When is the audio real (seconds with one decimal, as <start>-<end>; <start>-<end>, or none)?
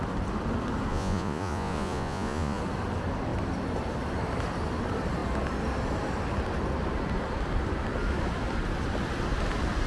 0.0-0.9; 2.6-9.9